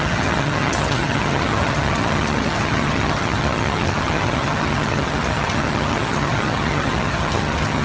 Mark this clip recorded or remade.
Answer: remade